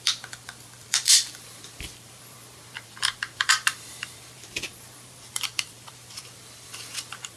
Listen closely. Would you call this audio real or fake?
fake